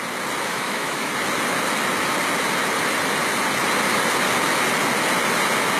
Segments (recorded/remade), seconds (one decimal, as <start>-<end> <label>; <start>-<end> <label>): 0.0-0.5 recorded; 0.5-1.1 remade; 1.1-5.8 recorded